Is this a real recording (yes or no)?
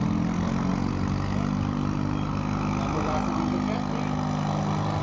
yes